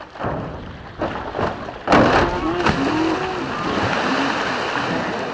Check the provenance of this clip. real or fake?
real